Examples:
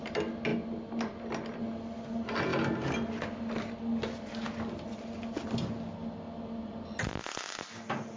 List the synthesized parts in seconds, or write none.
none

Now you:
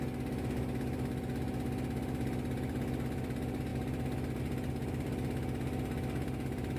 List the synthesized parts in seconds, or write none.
none

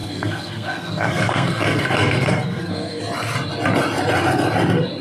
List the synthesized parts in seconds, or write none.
0.0-3.0 (codec, SNAC)

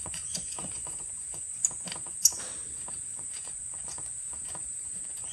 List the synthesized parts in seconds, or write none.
0.0-1.6 (vocoder, Vocos); 2.9-4.1; 4.6-5.3

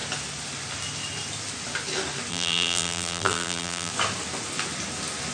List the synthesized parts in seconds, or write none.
2.3-3.9 (vocoder, BigVGAN v2)

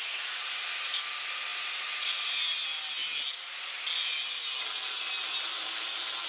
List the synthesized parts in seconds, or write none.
1.5-2.3 (vocoder, BigVGAN v2)

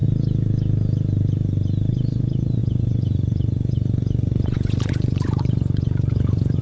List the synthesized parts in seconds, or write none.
1.9-6.6 (vocoder, Vocos)

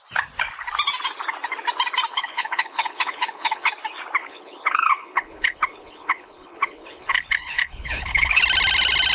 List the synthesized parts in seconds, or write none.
2.1-3.7 (codec, HILCodec); 4.2-8.4